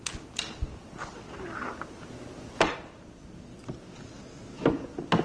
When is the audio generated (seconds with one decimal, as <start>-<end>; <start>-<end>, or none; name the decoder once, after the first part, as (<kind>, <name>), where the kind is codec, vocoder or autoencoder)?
none